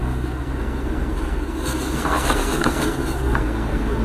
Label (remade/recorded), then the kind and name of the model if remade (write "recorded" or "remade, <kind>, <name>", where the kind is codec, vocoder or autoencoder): remade, codec, SNAC